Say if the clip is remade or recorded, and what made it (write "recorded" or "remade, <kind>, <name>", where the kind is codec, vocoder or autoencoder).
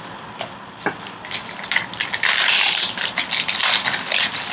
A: recorded